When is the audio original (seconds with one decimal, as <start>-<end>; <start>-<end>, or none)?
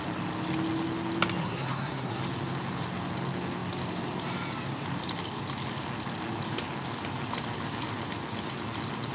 0.0-1.4; 2.2-9.1